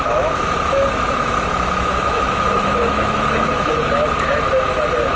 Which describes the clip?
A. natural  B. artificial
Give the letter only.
B